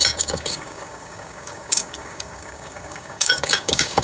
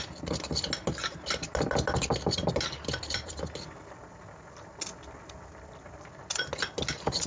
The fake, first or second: first